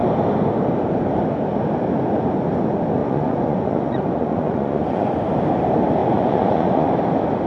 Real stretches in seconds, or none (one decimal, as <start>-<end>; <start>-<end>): 0.0-3.0; 5.1-6.0; 6.9-7.5